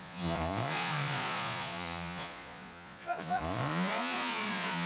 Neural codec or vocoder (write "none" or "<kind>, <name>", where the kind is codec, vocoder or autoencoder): vocoder, Vocos